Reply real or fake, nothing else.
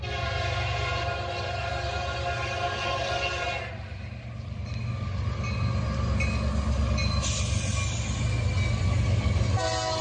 real